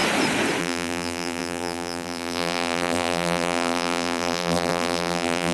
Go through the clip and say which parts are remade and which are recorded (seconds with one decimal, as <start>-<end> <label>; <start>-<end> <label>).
0.0-0.6 recorded; 0.6-5.5 remade